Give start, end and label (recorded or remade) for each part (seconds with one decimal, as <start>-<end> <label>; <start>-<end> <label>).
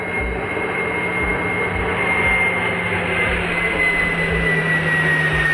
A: 0.0-5.5 recorded